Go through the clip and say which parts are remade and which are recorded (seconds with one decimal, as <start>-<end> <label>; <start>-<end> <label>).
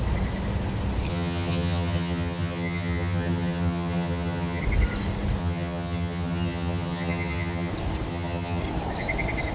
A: 0.0-1.1 recorded; 1.1-4.6 remade; 4.6-5.4 recorded; 5.4-7.7 remade; 7.7-8.1 recorded; 8.1-8.6 remade; 8.6-9.5 recorded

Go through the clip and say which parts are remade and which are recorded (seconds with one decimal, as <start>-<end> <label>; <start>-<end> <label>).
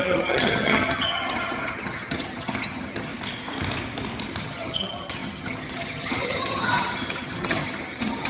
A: 0.0-3.1 remade; 3.1-4.4 recorded; 4.4-8.3 remade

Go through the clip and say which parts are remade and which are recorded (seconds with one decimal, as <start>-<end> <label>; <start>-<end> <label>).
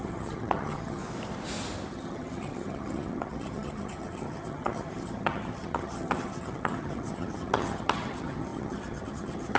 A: 0.0-1.0 remade; 1.0-1.9 recorded; 1.9-9.6 remade